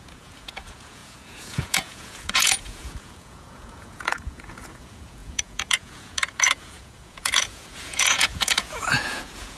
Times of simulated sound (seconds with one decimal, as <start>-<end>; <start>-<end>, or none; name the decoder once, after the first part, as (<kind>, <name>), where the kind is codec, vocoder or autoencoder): 0.0-9.6 (vocoder, Vocos)